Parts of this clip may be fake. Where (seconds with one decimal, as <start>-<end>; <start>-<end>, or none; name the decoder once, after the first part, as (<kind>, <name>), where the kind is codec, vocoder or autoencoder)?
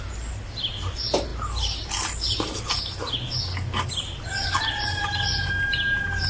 none